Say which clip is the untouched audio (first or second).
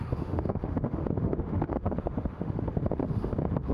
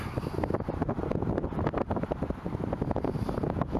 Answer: second